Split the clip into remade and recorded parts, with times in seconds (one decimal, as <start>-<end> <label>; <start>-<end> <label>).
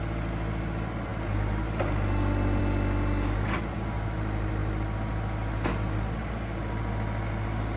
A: 0.0-7.8 recorded